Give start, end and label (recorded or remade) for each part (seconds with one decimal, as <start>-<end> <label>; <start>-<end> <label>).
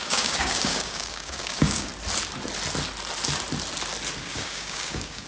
0.0-1.9 remade; 1.9-4.2 recorded; 4.2-5.3 remade